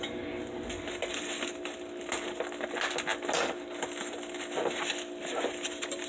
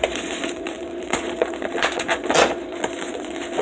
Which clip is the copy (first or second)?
second